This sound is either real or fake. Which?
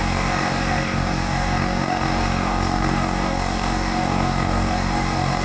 fake